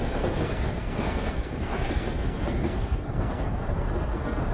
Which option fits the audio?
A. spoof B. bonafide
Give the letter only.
A